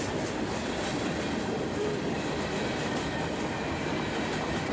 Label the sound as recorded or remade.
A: remade